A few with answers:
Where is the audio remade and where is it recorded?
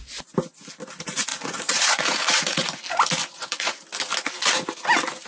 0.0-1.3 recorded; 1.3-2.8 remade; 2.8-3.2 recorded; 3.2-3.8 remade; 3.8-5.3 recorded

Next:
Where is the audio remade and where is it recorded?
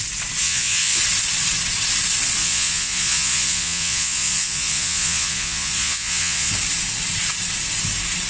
0.0-0.4 recorded; 0.4-1.0 remade; 1.0-2.4 recorded; 2.4-6.5 remade; 6.5-8.3 recorded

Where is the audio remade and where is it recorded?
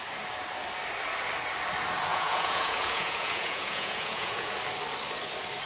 0.0-2.1 recorded; 2.1-4.6 remade; 4.6-5.7 recorded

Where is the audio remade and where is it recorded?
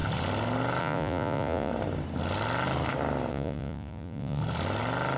0.0-0.8 recorded; 0.8-1.7 remade; 1.7-3.3 recorded; 3.3-4.4 remade; 4.4-5.2 recorded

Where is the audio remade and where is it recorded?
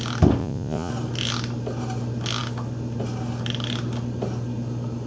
0.0-0.4 recorded; 0.4-0.9 remade; 0.9-5.1 recorded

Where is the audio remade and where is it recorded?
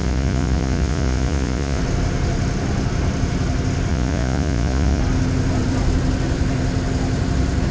0.0-1.8 remade; 1.8-3.9 recorded; 3.9-5.0 remade; 5.0-7.7 recorded